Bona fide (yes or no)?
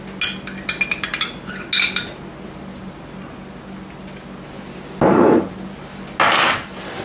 yes